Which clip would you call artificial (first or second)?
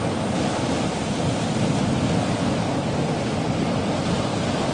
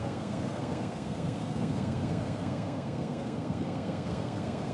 second